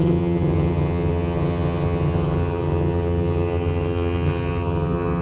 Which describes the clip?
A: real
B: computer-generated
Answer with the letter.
B